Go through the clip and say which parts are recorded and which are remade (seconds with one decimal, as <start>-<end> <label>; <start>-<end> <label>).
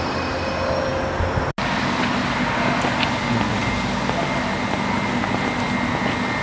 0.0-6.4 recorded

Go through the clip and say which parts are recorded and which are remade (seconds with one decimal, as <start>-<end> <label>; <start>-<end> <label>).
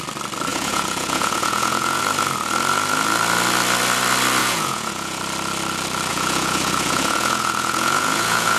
0.0-0.5 recorded; 0.5-2.0 remade; 2.0-4.4 recorded; 4.4-5.2 remade; 5.2-6.1 recorded; 6.1-8.6 remade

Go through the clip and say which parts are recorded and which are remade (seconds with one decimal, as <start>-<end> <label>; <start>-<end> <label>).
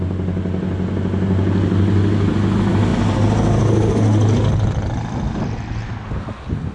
0.0-6.7 recorded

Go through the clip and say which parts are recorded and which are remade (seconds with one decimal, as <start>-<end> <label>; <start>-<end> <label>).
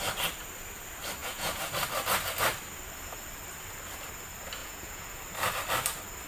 0.0-1.2 recorded; 1.2-1.7 remade; 1.7-4.6 recorded; 4.6-5.2 remade; 5.2-6.3 recorded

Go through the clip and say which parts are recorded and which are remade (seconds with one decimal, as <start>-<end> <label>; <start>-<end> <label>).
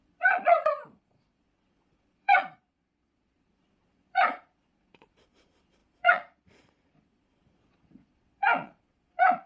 0.0-9.5 remade